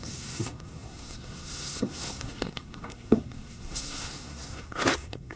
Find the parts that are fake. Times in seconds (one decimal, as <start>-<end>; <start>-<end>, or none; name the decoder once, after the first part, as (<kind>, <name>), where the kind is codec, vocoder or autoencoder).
0.0-5.4 (codec, SNAC)